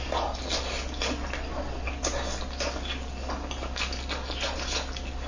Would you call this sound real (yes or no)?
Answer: yes